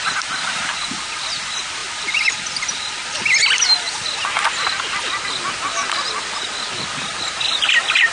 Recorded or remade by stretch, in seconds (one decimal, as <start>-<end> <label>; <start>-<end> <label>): 0.0-8.1 recorded